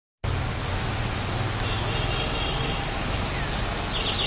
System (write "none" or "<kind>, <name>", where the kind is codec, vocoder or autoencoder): none